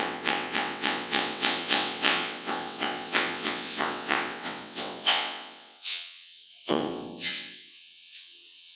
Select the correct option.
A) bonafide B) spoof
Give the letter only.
B